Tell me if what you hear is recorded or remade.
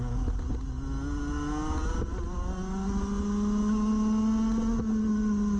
recorded